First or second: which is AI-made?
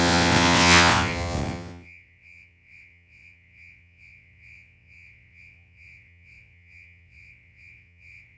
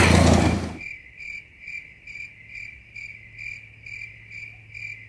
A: first